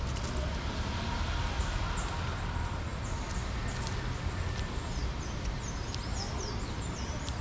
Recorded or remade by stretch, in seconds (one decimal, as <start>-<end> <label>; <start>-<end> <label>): 0.0-7.4 recorded